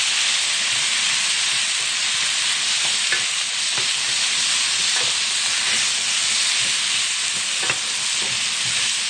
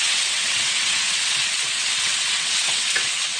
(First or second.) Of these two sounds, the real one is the first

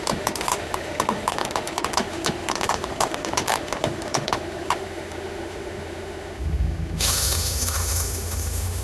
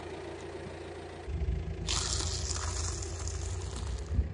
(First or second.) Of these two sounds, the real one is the second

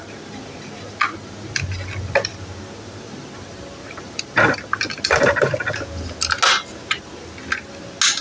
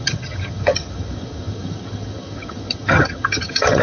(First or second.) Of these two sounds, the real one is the first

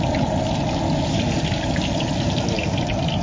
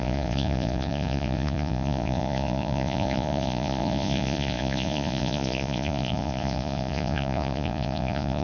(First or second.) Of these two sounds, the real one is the first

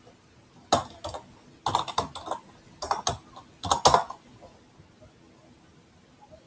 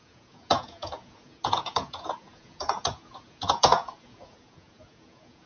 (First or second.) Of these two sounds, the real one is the first